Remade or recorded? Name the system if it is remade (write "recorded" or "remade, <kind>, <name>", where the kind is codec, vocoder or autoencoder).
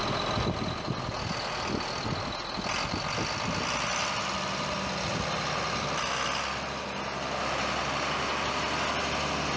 recorded